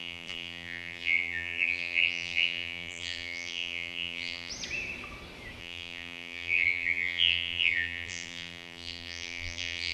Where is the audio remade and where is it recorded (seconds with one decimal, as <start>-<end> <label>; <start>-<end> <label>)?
0.0-4.5 remade; 4.5-5.6 recorded; 5.6-9.9 remade